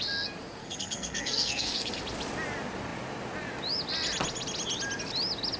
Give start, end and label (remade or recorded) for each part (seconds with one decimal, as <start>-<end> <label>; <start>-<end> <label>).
0.0-0.6 recorded; 0.6-2.0 remade; 2.0-5.6 recorded